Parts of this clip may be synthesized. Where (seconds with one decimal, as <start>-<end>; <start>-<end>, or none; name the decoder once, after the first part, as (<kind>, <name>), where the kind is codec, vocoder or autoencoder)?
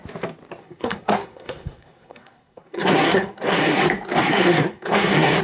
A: 0.6-3.8 (codec, SNAC); 4.2-5.4